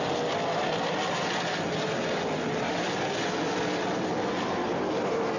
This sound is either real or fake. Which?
real